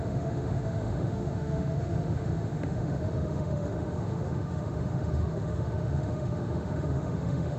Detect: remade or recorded remade